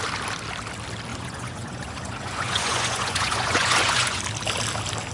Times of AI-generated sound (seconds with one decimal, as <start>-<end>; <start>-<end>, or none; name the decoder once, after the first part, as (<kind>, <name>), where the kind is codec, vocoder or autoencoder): 1.1-4.2 (vocoder, Vocos)